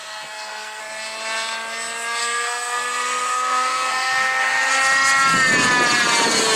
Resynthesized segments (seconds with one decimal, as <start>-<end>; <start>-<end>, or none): 0.0-0.8; 2.2-4.7